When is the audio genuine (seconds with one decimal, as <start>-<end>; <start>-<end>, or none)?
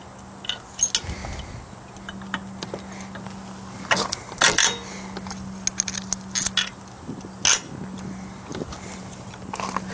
0.0-9.9